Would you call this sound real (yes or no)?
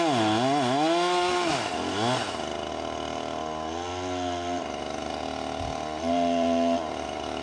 yes